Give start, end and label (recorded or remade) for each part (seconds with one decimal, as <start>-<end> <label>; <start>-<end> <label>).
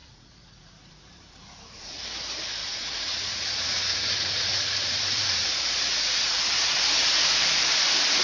0.0-2.0 remade; 2.0-2.6 recorded; 2.6-6.8 remade; 6.8-8.2 recorded